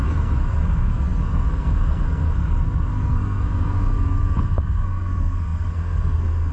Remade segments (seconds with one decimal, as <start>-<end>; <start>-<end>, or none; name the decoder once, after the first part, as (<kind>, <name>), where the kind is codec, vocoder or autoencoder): 0.0-6.5 (codec, SNAC)